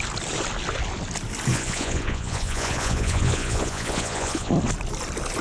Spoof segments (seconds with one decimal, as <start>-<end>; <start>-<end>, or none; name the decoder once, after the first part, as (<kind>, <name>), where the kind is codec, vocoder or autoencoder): 1.5-4.5 (vocoder, Vocos)